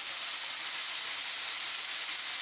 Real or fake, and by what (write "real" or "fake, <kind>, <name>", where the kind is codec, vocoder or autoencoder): real